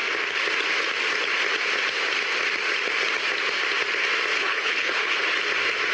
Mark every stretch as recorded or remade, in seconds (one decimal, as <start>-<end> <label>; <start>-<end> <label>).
0.0-4.4 recorded; 4.4-5.2 remade; 5.2-5.9 recorded